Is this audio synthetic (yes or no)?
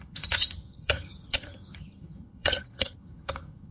yes